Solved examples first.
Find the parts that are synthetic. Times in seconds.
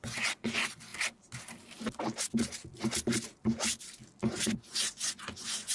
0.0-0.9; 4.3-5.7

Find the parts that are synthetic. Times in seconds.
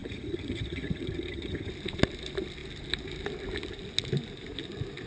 0.0-1.7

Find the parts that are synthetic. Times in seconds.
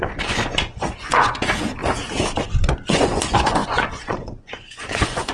0.0-1.8; 2.4-5.3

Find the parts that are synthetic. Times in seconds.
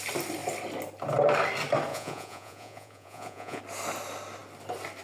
1.9-3.6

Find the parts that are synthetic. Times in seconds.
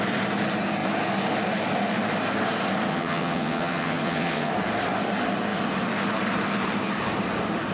2.9-4.5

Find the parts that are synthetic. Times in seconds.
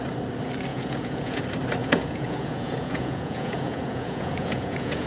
0.7-1.4; 1.8-5.1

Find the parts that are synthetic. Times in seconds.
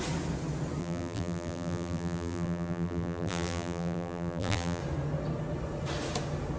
0.8-4.8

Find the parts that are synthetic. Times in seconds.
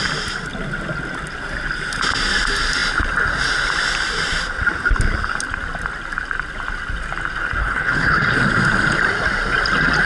7.6-8.2